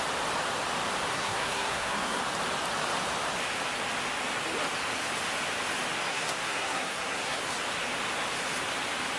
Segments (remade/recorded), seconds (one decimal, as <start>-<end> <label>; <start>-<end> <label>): 0.0-1.1 recorded; 1.1-2.2 remade; 2.2-6.1 recorded; 6.1-7.4 remade; 7.4-9.2 recorded